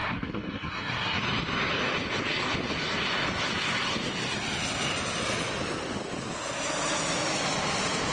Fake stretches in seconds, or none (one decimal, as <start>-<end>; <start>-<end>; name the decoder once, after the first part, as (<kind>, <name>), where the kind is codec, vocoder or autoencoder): 0.0-1.2 (codec, SNAC)